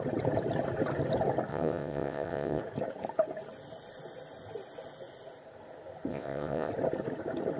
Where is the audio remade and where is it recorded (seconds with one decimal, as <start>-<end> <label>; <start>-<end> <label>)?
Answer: 0.0-1.5 recorded; 1.5-2.6 remade; 2.6-6.1 recorded; 6.1-6.7 remade; 6.7-7.6 recorded